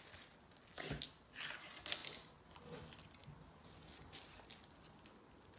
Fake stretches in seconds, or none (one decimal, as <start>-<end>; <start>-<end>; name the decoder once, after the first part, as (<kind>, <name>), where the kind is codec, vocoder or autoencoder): none